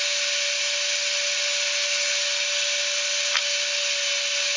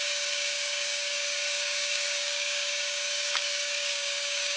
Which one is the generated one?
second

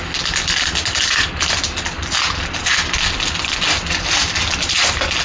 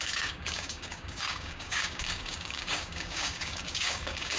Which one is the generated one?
second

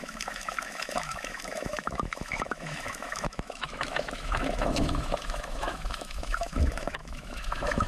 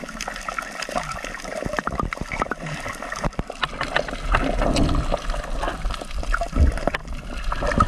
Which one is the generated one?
first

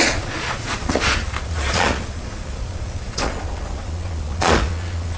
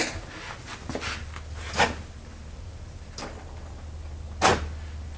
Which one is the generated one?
first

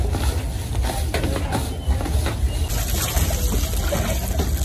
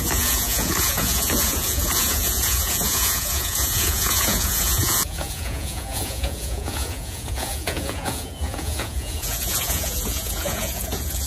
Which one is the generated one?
second